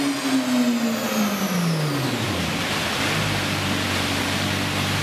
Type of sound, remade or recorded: recorded